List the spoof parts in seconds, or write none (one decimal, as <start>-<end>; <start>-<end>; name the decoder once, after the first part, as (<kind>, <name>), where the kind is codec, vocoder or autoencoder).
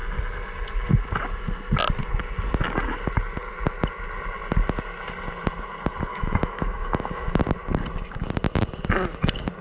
6.1-7.4 (autoencoder, DAC-VAE)